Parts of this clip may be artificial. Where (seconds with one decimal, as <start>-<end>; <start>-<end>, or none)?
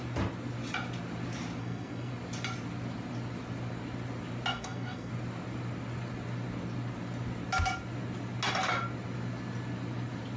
1.6-2.1; 4.5-5.1